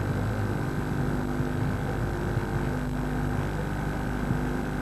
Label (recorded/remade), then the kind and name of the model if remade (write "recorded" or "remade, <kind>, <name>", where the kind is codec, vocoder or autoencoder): recorded